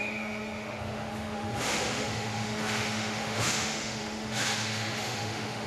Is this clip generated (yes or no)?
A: yes